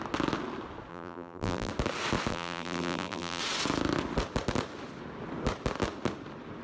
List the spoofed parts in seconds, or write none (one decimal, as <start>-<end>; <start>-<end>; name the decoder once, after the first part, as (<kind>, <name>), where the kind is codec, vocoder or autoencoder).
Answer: 0.9-1.7 (vocoder, BigVGAN v2); 2.3-3.4